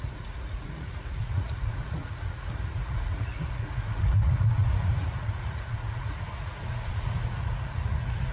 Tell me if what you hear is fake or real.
fake